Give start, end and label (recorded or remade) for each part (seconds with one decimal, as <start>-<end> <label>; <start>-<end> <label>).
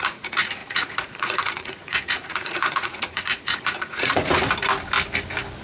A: 0.0-4.4 remade; 4.4-5.6 recorded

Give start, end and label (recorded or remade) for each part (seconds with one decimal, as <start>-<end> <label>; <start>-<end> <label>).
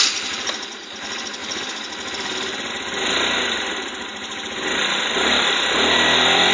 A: 0.0-6.5 recorded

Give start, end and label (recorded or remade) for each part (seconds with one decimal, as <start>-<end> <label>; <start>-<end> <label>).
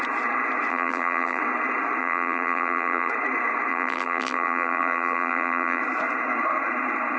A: 0.0-0.7 recorded; 0.7-1.4 remade; 1.4-2.0 recorded; 2.0-3.1 remade; 3.1-3.7 recorded; 3.7-5.8 remade; 5.8-7.2 recorded